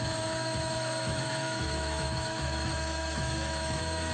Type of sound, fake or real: fake